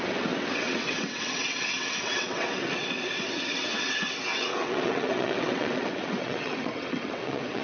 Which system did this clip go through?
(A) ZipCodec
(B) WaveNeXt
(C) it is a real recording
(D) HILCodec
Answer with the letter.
B